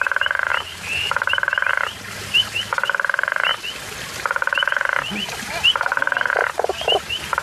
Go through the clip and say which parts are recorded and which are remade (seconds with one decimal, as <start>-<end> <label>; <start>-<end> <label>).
0.0-3.5 remade; 3.5-6.3 recorded; 6.3-7.4 remade

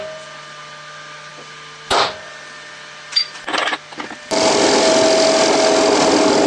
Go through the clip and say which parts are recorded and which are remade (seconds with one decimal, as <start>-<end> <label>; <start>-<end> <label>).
0.0-6.5 recorded

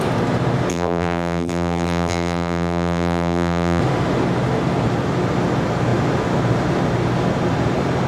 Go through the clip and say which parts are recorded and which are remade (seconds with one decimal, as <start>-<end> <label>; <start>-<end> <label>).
0.0-0.7 recorded; 0.7-3.8 remade; 3.8-8.1 recorded

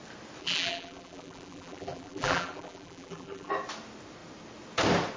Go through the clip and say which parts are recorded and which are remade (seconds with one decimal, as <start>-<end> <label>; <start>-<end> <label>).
0.0-0.4 recorded; 0.4-3.5 remade; 3.5-5.2 recorded

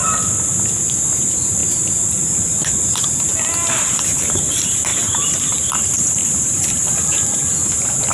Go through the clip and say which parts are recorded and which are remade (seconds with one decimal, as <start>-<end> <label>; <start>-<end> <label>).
0.0-0.8 recorded; 0.8-1.6 remade; 1.6-4.0 recorded; 4.0-8.1 remade

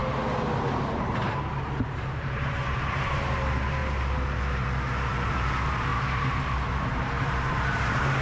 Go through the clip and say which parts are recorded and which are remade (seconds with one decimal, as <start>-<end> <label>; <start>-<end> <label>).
0.0-1.8 recorded; 1.8-3.8 remade; 3.8-5.3 recorded; 5.3-8.2 remade